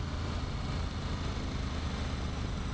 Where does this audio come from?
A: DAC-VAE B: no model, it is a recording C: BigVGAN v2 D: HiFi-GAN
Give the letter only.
B